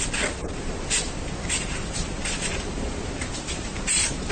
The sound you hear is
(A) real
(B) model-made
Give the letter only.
A